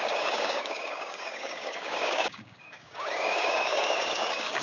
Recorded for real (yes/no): no